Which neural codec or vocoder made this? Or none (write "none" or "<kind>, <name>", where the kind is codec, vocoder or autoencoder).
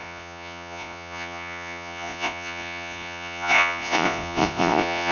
vocoder, Vocos